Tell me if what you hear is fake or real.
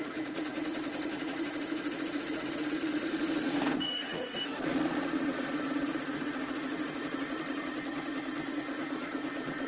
fake